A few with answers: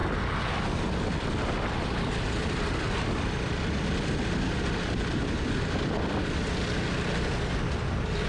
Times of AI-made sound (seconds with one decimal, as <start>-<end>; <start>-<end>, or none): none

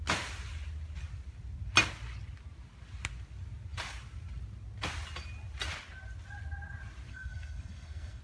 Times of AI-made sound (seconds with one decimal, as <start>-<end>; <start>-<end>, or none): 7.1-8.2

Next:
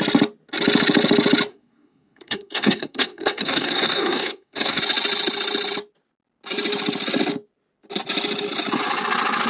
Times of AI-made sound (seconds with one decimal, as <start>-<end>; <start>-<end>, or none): 1.5-4.8

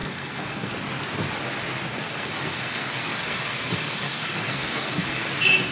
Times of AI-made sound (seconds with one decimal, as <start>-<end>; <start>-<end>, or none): 0.0-0.7; 1.9-5.3